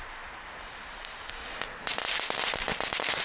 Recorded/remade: remade